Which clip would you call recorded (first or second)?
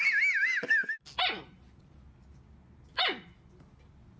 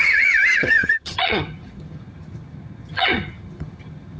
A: first